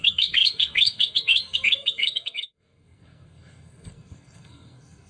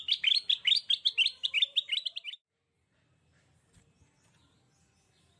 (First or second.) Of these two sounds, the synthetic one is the first